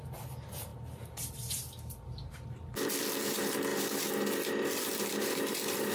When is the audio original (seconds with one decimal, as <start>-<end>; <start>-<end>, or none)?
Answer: 0.0-5.9

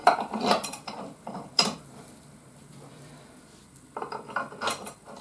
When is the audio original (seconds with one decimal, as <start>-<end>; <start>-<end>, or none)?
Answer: 3.1-5.2